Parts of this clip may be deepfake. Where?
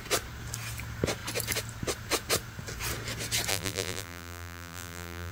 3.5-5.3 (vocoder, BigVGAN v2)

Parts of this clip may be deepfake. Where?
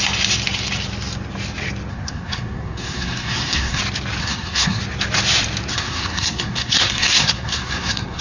1.9-3.8 (codec, SNAC); 4.2-4.8; 5.7-8.2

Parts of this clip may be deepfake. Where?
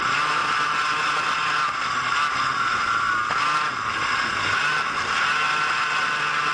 none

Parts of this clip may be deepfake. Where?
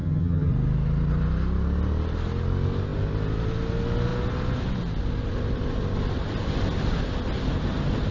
0.0-0.5 (vocoder, HiFi-GAN)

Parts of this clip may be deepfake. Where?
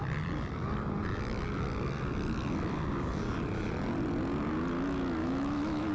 5.2-5.9 (autoencoder, DAC-VAE)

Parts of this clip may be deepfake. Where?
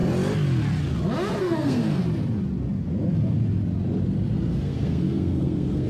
1.4-2.0 (codec, SNAC); 4.5-5.9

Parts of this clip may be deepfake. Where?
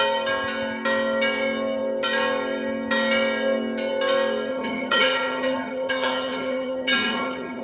4.5-7.6 (vocoder, HiFi-GAN)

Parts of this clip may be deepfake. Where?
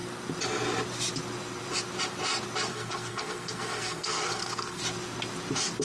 2.7-4.8 (codec, SNAC)